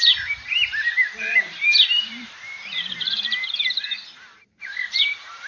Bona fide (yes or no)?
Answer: no